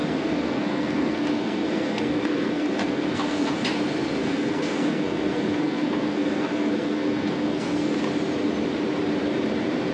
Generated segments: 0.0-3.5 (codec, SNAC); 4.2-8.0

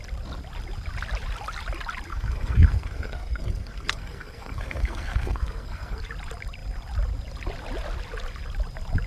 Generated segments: 2.1-6.0 (codec, SNAC)